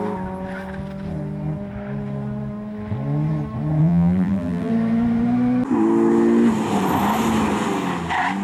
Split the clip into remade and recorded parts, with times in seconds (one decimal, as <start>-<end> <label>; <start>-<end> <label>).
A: 0.0-3.8 recorded; 3.8-4.7 remade; 4.7-8.4 recorded